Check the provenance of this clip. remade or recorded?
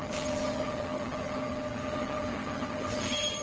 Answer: remade